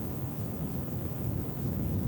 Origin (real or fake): fake